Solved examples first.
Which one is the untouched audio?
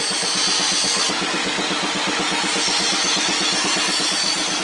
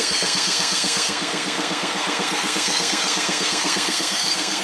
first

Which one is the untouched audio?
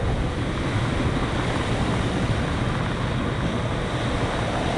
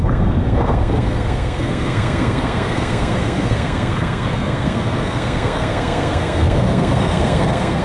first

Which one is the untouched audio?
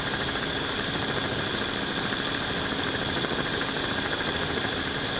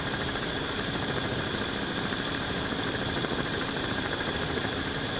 first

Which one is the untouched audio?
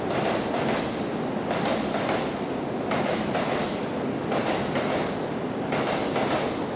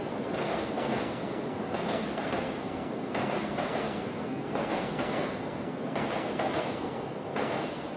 first